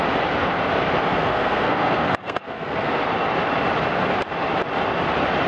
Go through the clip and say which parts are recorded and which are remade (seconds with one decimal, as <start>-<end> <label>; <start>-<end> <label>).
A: 0.0-1.1 recorded; 1.1-3.0 remade; 3.0-5.5 recorded